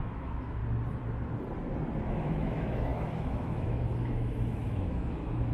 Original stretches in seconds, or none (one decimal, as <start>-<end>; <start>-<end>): 0.6-2.1